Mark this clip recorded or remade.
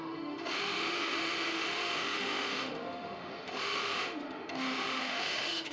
remade